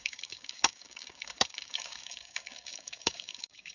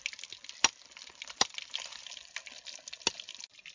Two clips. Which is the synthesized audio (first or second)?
first